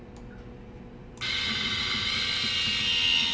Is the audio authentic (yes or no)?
yes